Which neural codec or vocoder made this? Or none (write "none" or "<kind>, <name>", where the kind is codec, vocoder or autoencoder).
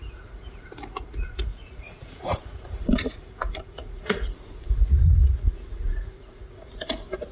vocoder, Vocos